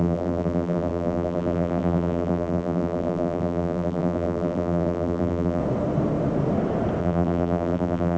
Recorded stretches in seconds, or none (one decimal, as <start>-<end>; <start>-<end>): 5.6-7.0